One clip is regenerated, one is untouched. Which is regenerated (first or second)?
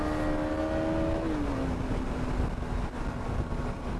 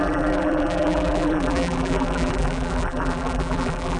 second